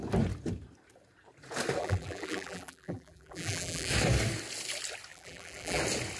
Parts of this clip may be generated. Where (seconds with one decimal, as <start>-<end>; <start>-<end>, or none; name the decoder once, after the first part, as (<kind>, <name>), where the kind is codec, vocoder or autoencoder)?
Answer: 1.8-3.9 (vocoder, BigVGAN v2); 5.1-5.8